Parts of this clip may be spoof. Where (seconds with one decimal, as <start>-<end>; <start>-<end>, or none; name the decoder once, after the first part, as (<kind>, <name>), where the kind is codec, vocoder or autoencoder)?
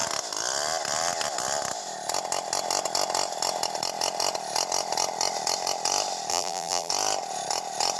6.3-6.9 (vocoder, BigVGAN v2)